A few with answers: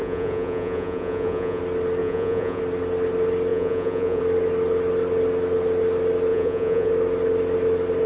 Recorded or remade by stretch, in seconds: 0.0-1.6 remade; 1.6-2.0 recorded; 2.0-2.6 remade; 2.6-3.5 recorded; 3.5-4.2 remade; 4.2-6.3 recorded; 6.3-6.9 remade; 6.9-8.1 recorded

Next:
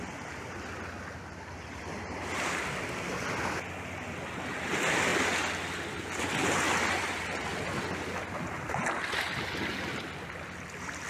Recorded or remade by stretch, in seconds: 0.0-11.1 recorded

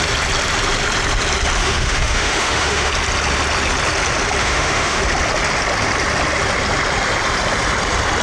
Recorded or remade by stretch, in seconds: 0.0-1.6 recorded; 1.6-2.9 remade; 2.9-4.4 recorded; 4.4-5.0 remade; 5.0-8.2 recorded

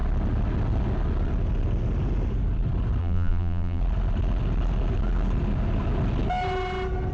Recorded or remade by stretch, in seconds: 0.0-3.0 recorded; 3.0-3.8 remade; 3.8-7.1 recorded

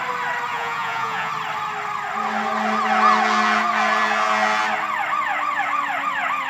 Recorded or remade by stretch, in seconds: 0.0-0.5 recorded; 0.5-1.3 remade; 1.3-6.5 recorded

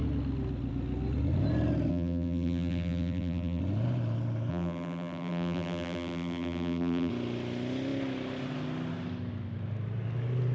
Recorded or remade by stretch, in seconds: 0.0-1.9 recorded; 1.9-3.6 remade; 3.6-4.5 recorded; 4.5-7.1 remade; 7.1-10.5 recorded

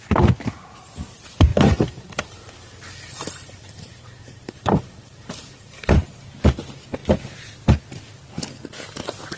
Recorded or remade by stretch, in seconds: 0.0-1.5 recorded; 1.5-5.9 remade; 5.9-9.4 recorded